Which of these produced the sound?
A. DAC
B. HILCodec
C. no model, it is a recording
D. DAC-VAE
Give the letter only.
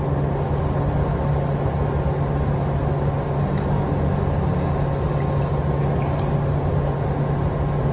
C